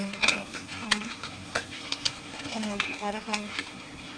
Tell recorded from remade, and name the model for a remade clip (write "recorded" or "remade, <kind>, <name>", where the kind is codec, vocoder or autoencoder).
remade, codec, SNAC